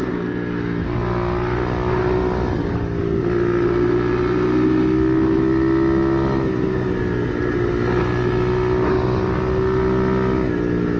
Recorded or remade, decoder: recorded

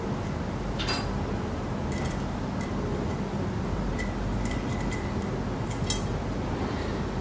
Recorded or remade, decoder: recorded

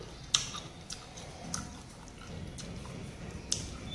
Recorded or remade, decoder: recorded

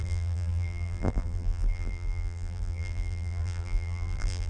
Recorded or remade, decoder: remade, vocoder, BigVGAN v2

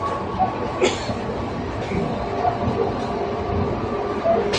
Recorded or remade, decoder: recorded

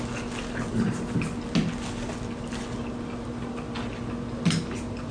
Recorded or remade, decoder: recorded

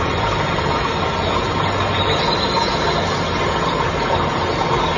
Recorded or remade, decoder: recorded